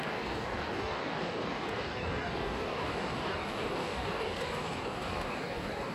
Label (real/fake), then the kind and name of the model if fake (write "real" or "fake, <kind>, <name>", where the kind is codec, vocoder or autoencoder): fake, codec, DAC